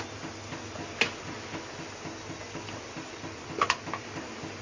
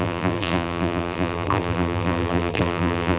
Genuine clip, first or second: first